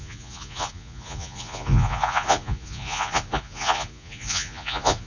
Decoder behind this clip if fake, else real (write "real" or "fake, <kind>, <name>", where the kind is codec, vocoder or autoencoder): fake, vocoder, Vocos